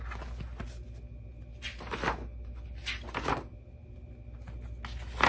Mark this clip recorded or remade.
recorded